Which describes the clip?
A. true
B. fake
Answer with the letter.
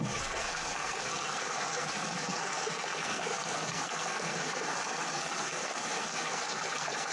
B